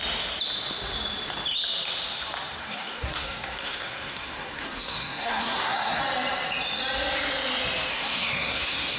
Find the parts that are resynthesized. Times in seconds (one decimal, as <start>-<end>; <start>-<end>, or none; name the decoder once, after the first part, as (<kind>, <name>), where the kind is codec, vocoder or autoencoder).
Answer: 2.6-6.0 (codec, SNAC); 7.9-9.0